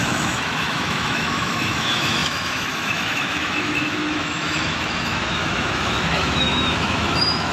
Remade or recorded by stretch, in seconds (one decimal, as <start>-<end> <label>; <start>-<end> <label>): 0.0-7.5 remade